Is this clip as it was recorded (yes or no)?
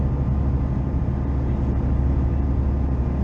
yes